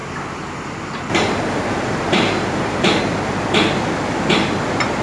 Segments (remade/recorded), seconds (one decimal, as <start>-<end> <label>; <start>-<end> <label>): 0.0-3.0 remade; 3.0-5.0 recorded